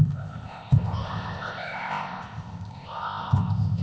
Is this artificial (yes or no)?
yes